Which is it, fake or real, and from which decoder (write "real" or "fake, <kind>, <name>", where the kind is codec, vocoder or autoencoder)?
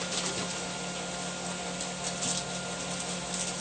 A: real